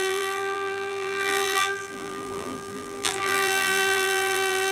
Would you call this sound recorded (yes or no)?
no